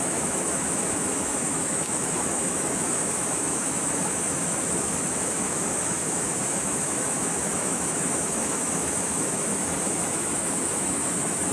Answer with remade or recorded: remade